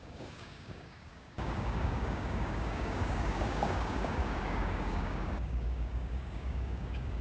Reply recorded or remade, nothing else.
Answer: remade